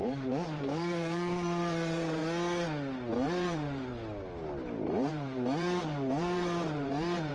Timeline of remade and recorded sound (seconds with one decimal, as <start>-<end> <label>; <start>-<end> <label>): 0.0-2.2 remade; 2.2-3.1 recorded; 3.1-3.9 remade; 3.9-4.9 recorded; 4.9-7.3 remade